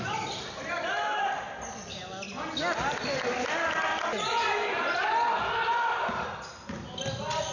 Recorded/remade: recorded